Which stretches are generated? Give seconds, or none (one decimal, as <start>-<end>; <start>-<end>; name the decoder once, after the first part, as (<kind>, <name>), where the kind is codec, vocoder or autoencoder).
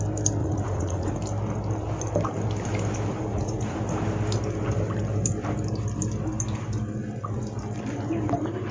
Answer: 0.4-1.2 (vocoder, Vocos); 3.1-3.8